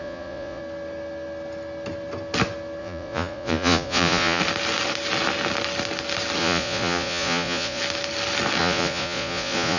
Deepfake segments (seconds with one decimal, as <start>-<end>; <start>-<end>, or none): 0.0-0.6; 2.8-4.4; 6.4-7.8; 8.6-9.8